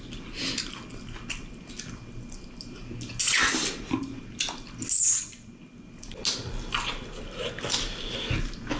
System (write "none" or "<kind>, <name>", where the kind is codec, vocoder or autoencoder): none